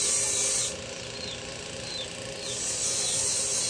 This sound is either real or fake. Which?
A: real